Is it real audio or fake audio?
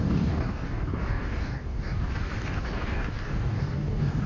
fake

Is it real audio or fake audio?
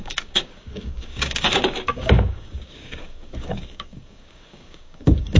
fake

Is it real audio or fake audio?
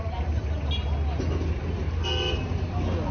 real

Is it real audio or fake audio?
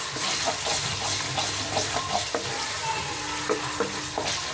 real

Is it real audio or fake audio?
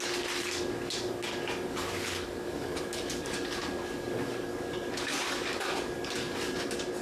fake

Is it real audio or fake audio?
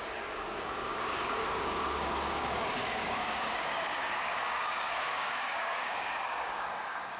fake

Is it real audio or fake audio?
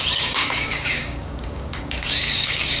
fake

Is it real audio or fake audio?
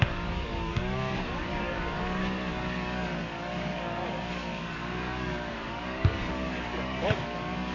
fake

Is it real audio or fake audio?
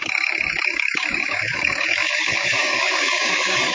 fake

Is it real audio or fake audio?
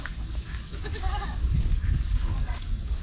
fake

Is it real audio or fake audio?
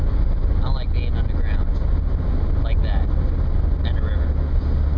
real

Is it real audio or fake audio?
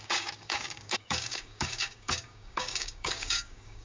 fake